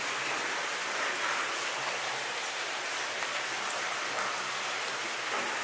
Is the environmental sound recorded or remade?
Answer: recorded